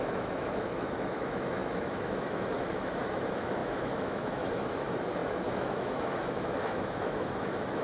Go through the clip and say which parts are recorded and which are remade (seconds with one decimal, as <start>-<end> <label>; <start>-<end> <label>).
0.0-7.8 remade